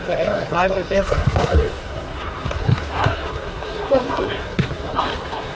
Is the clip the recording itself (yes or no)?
no